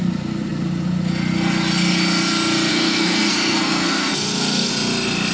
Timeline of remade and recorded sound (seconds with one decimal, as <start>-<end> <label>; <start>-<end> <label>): 0.0-2.7 recorded; 2.7-4.7 remade; 4.7-5.3 recorded